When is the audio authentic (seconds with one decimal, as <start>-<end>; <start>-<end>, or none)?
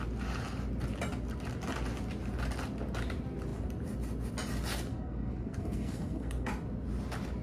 0.0-4.9; 6.5-7.4